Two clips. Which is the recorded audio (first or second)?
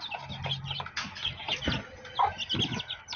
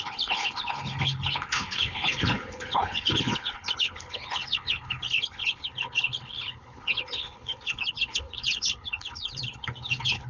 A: first